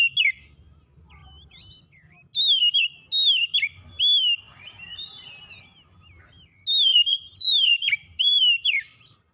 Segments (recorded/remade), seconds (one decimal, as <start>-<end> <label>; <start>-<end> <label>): 0.0-6.9 recorded; 6.9-9.3 remade